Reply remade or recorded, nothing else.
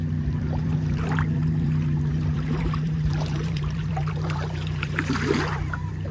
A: remade